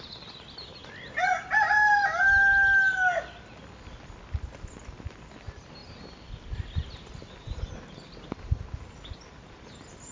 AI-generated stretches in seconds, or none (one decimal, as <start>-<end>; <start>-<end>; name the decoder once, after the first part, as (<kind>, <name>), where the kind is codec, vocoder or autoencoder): none